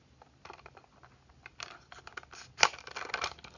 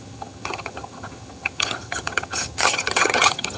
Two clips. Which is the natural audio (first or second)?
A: first